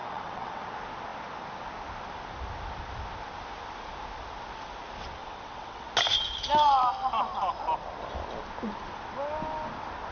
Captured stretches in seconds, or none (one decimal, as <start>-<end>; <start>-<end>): 0.6-5.2; 5.9-10.1

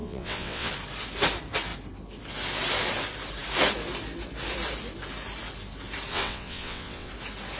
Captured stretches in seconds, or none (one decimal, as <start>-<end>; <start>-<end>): 0.7-6.1; 7.1-7.6

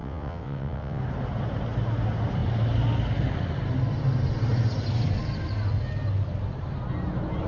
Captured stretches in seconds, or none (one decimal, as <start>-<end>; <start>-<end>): 1.0-7.5

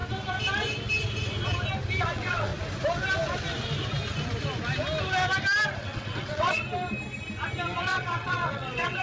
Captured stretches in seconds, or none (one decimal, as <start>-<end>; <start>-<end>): 0.0-2.0; 2.5-5.8; 6.6-7.8

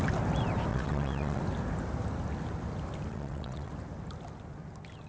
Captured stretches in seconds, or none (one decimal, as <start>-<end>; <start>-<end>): 0.0-0.7; 1.4-3.1; 3.7-5.1

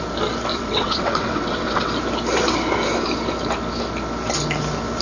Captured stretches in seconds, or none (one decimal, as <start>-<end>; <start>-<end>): 0.0-0.5; 1.9-5.0